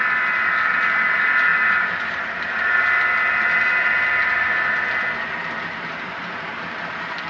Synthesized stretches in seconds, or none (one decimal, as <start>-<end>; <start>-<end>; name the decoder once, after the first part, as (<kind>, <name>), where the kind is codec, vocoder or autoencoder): none

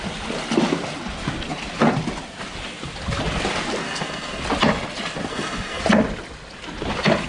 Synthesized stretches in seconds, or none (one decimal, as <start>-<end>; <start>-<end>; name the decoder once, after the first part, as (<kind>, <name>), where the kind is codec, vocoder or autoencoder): 3.8-4.4 (codec, SNAC); 5.3-5.8

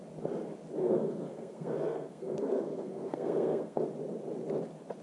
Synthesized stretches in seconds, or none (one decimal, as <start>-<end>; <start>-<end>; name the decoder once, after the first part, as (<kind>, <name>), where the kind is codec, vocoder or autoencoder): 0.8-3.8 (codec, SNAC)

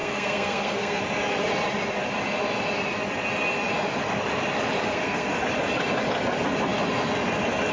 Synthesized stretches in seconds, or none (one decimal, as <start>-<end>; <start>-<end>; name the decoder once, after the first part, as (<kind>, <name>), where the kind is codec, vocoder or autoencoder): 0.0-1.0 (codec, SNAC); 4.8-5.4

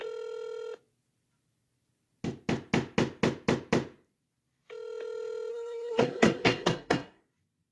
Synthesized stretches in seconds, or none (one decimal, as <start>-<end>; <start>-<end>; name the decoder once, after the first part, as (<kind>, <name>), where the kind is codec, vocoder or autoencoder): 5.5-7.2 (codec, SNAC)

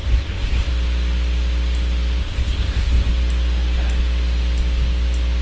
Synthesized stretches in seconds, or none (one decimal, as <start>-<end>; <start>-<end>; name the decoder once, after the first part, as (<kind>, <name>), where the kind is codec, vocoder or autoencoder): 0.0-0.7 (codec, SNAC); 2.2-3.1